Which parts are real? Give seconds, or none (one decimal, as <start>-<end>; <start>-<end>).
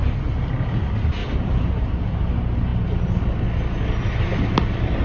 0.0-1.2; 1.7-5.0